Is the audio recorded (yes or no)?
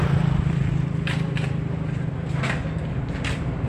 no